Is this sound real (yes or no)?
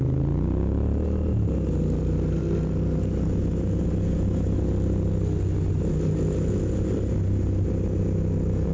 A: yes